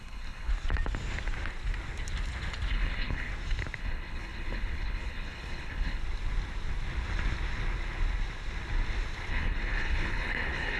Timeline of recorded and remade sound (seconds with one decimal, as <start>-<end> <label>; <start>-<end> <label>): 0.0-0.5 remade; 0.5-2.7 recorded; 2.7-3.3 remade; 3.3-3.8 recorded; 3.8-6.0 remade; 6.0-9.3 recorded; 9.3-10.8 remade